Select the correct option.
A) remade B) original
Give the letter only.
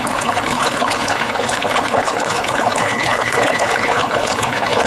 A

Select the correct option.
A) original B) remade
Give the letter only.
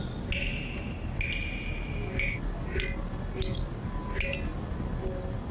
A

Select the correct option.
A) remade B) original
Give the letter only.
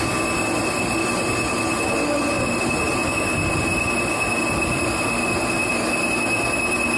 B